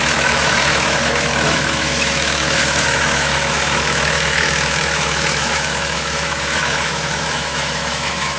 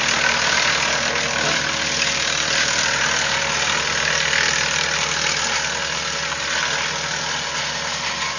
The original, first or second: second